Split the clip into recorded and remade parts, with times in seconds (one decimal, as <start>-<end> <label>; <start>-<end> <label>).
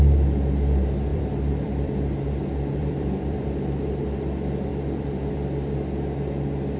0.0-1.1 recorded; 1.1-1.9 remade; 1.9-2.8 recorded; 2.8-3.8 remade; 3.8-4.7 recorded; 4.7-5.3 remade; 5.3-6.8 recorded